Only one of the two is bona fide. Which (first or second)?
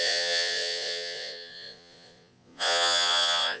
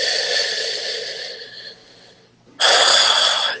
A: second